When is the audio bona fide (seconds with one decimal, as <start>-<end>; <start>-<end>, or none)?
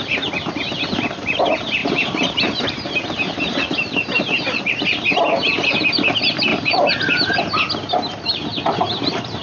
0.0-1.8; 4.6-6.5; 7.4-9.4